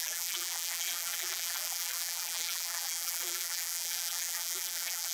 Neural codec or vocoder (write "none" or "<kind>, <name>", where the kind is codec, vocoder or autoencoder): vocoder, BigVGAN v2